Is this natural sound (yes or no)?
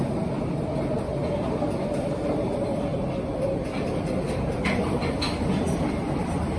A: yes